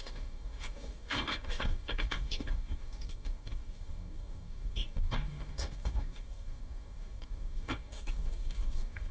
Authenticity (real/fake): fake